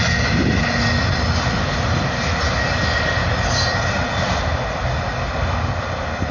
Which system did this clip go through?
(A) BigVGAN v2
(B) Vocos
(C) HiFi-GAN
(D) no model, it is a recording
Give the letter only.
D